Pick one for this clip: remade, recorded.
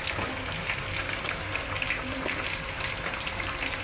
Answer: recorded